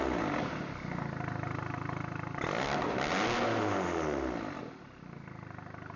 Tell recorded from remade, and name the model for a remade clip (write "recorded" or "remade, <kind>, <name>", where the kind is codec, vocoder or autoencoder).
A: recorded